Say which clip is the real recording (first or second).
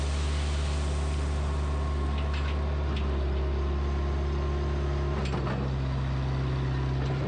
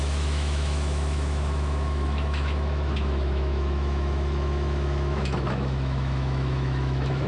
first